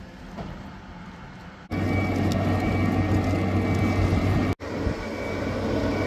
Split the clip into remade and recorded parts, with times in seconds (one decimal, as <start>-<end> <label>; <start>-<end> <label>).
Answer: 0.0-6.1 recorded